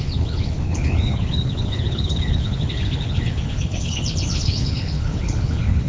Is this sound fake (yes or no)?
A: yes